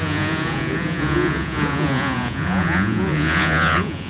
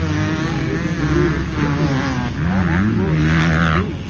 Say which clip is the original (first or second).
second